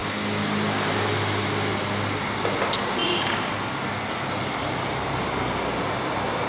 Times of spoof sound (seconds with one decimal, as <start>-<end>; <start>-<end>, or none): none

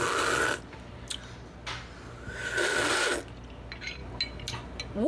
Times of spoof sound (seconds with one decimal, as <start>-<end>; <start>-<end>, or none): none

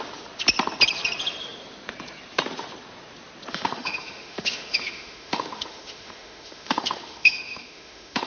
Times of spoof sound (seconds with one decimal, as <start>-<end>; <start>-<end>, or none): 3.5-8.3